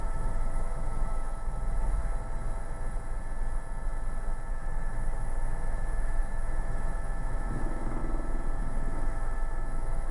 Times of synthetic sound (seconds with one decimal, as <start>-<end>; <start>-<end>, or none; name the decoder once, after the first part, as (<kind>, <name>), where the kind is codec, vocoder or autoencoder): 0.0-2.0 (autoencoder, DAC-VAE); 4.5-8.0; 8.6-10.1